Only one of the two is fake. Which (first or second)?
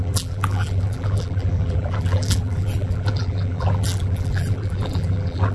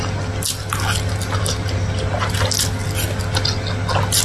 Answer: first